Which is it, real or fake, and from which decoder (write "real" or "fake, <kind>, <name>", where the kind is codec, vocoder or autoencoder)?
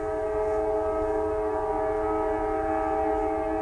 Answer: real